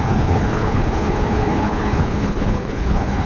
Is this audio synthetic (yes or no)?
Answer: yes